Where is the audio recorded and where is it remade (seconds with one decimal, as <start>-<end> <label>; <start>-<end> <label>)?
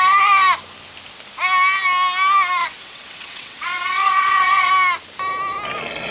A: 0.0-2.6 recorded; 2.6-4.7 remade; 4.7-6.1 recorded